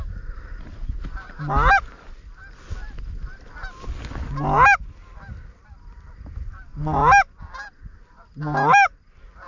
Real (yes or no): yes